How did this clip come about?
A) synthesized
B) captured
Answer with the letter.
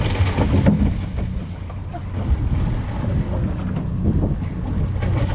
B